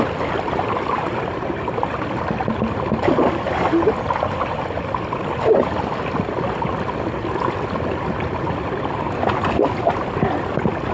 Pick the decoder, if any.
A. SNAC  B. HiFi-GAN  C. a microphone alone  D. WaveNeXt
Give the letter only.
C